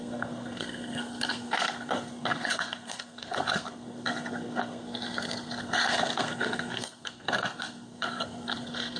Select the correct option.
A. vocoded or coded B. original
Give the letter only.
A